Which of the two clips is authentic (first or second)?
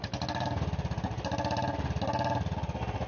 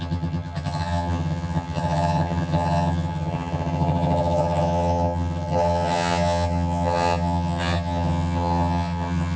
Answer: first